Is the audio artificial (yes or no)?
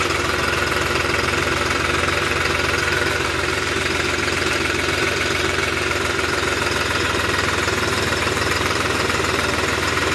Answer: yes